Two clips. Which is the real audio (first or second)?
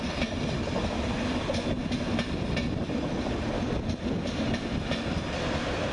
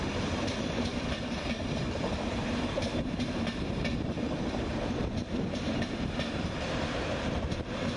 first